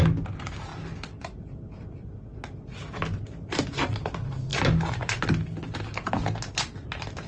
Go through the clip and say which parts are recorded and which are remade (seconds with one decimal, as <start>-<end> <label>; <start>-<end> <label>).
0.0-7.3 recorded